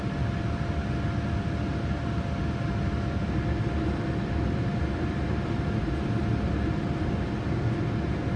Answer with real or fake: real